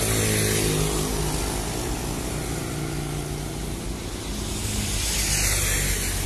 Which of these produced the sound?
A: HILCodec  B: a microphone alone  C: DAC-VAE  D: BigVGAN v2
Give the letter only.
B